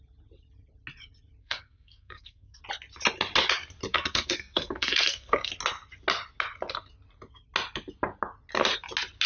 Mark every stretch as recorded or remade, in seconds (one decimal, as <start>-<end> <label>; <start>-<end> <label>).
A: 0.0-1.4 recorded; 1.4-2.6 remade; 2.6-3.9 recorded; 3.9-5.5 remade; 5.5-9.3 recorded